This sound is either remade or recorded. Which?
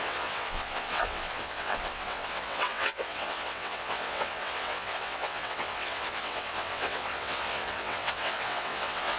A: remade